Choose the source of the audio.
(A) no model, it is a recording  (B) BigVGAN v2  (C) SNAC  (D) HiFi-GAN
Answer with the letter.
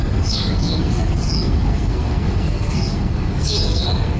C